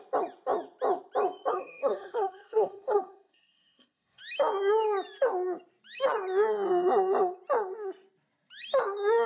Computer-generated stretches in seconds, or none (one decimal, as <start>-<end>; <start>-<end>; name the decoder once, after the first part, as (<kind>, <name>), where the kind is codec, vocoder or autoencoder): 1.5-4.2 (codec, SNAC)